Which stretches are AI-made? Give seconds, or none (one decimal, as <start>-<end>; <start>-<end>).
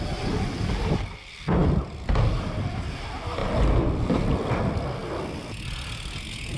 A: none